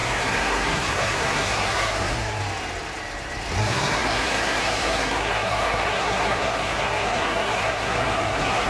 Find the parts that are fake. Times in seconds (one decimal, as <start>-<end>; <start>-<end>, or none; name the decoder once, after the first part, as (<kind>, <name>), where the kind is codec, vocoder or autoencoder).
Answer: 0.0-2.4 (codec, SNAC); 3.6-8.7